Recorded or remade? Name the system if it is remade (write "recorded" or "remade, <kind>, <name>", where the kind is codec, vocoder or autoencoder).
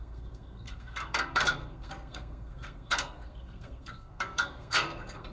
remade, codec, SNAC